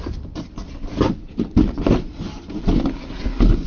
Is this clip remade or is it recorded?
recorded